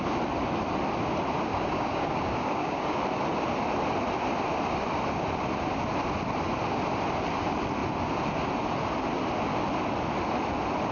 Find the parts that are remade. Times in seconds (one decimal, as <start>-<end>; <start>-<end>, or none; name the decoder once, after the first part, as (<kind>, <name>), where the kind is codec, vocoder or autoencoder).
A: 1.5-3.0 (codec, DAC)